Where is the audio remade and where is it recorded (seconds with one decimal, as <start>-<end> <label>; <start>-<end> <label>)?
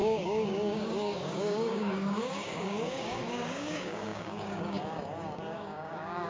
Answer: 0.0-6.3 remade